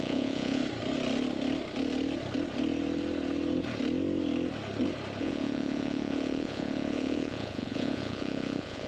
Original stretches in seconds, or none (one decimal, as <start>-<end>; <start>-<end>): 0.6-5.2